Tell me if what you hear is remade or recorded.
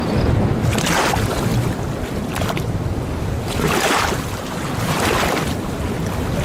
recorded